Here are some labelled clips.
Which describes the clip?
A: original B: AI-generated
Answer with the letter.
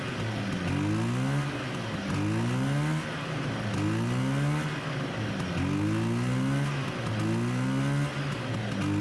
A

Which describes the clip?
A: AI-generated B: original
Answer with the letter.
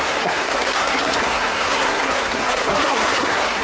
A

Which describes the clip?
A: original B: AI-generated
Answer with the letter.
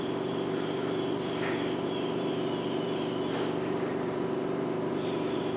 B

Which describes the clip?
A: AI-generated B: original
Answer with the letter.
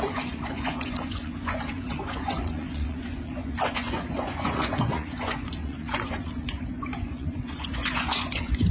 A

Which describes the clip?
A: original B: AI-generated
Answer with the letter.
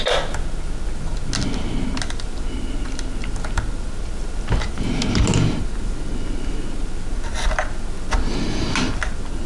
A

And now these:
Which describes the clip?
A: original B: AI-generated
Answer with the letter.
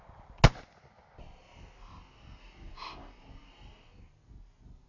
A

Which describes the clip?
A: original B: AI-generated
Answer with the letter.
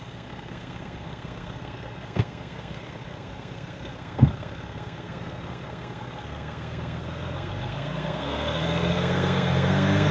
B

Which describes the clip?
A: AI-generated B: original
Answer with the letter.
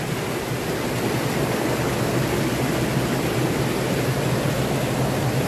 B